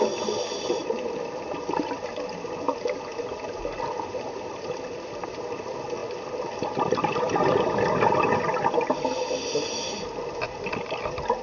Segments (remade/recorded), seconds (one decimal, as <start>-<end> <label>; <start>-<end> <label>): 0.0-0.8 recorded; 0.8-2.0 remade; 2.0-11.4 recorded